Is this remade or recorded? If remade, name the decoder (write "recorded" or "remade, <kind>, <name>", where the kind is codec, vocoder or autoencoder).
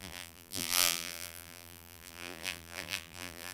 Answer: remade, vocoder, BigVGAN v2